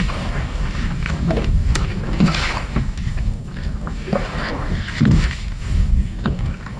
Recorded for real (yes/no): no